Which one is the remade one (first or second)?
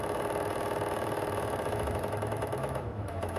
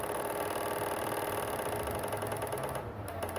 first